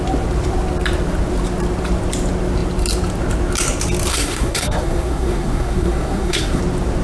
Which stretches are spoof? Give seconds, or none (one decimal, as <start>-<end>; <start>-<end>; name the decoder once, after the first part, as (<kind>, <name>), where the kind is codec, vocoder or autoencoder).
4.1-6.6 (codec, SNAC)